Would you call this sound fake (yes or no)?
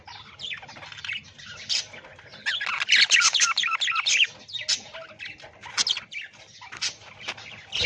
no